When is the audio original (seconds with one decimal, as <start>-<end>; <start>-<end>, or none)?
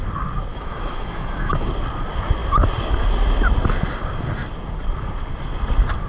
0.0-0.5; 1.7-6.1